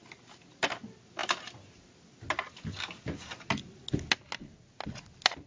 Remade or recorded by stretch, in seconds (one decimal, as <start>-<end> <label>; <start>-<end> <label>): 0.0-5.5 recorded